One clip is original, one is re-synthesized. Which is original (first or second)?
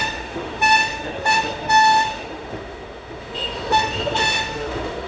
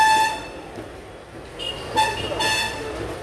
second